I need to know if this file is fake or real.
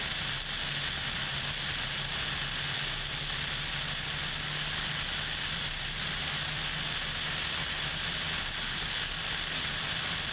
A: real